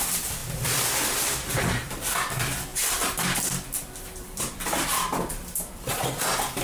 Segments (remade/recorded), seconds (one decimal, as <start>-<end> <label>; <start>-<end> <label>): 0.0-0.4 remade; 0.4-1.5 recorded; 1.5-6.6 remade